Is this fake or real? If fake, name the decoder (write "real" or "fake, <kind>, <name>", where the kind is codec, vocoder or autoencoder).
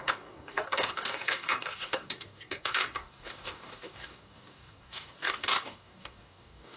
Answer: fake, codec, DAC